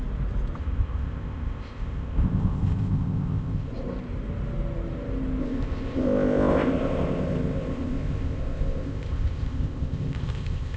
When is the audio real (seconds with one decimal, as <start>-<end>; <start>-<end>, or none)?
0.0-0.6; 3.7-5.4